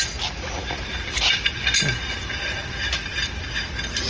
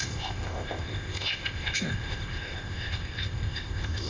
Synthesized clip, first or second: second